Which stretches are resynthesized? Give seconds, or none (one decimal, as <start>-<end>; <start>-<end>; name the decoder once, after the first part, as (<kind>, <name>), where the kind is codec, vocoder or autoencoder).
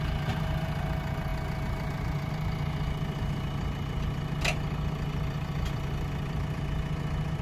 none